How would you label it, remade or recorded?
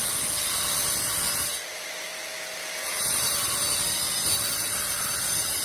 recorded